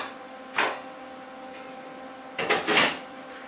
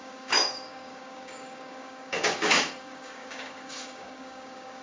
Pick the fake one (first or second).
second